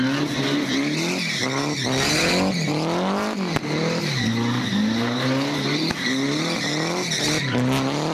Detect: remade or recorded recorded